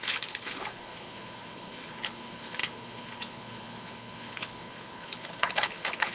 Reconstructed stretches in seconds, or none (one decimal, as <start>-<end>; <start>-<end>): 0.0-6.1